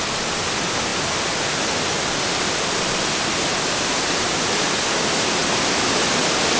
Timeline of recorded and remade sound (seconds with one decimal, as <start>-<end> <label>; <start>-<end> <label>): 0.0-6.6 recorded